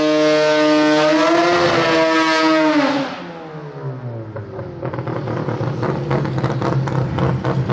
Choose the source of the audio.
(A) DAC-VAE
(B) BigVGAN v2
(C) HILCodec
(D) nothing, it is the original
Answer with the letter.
D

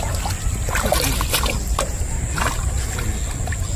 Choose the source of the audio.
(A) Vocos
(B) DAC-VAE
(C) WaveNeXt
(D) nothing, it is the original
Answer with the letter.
D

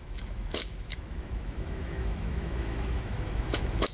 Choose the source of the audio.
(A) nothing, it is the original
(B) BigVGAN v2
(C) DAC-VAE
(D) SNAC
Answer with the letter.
C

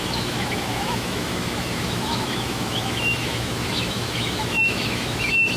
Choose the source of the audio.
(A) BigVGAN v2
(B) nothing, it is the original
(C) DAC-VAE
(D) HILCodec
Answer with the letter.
C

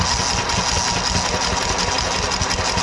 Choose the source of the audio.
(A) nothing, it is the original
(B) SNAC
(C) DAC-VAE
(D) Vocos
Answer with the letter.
A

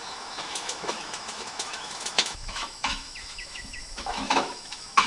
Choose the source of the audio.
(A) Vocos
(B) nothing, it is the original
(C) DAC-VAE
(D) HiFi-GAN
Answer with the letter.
C